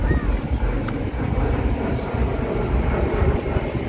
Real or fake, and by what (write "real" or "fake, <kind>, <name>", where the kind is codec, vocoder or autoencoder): real